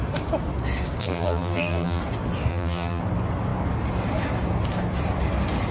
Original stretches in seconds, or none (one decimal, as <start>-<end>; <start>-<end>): 0.0-1.0; 2.0-2.5; 3.0-5.7